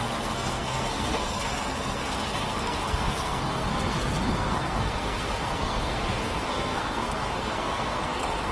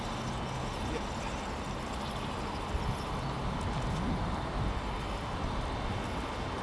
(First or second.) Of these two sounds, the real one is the second